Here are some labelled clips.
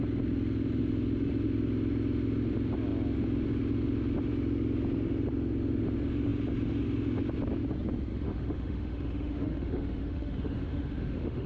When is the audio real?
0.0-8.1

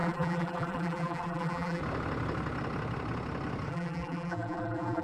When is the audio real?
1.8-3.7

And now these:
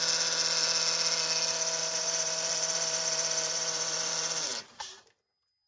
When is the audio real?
0.0-1.8; 5.2-5.7